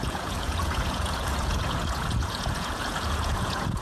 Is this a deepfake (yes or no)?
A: yes